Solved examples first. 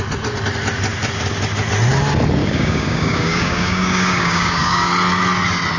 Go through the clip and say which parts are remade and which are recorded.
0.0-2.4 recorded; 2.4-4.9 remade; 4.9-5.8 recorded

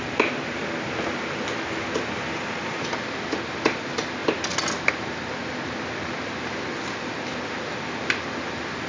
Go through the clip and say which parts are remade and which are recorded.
0.0-8.9 recorded